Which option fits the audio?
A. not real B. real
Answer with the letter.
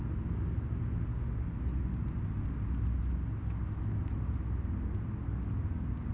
B